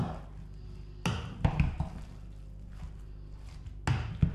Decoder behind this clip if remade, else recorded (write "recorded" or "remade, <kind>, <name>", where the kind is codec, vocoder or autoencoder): recorded